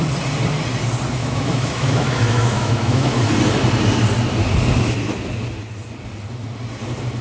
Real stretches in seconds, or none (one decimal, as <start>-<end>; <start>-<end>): 0.0-1.2; 3.2-7.2